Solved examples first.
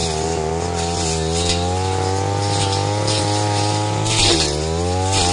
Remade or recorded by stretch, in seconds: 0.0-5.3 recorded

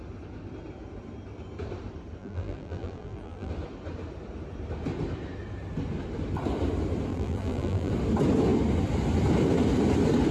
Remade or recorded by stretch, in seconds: 0.0-2.2 recorded; 2.2-3.5 remade; 3.5-7.1 recorded; 7.1-7.9 remade; 7.9-10.3 recorded